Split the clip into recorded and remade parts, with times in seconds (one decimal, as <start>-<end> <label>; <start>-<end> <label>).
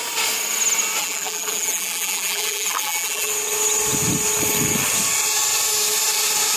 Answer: 0.0-1.0 recorded; 1.0-3.3 remade; 3.3-6.6 recorded